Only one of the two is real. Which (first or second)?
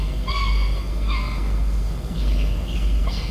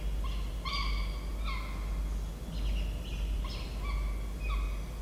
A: second